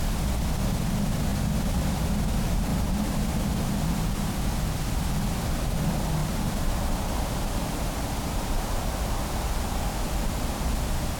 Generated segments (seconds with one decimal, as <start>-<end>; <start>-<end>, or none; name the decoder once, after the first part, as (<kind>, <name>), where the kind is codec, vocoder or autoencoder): 2.7-3.7 (vocoder, BigVGAN v2); 6.2-9.2